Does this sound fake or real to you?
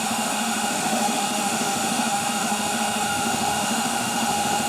fake